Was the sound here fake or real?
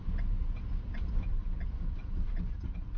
real